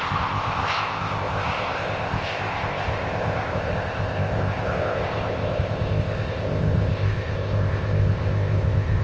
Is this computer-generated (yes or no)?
yes